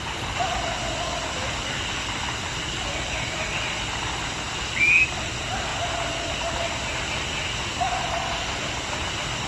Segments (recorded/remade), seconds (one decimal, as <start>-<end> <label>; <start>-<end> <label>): 0.0-9.5 recorded